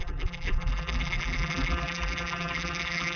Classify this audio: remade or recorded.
remade